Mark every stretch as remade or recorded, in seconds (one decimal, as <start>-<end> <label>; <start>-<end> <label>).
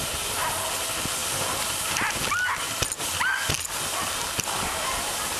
0.0-5.4 recorded